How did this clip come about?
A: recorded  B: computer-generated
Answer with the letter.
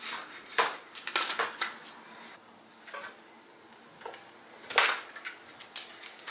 A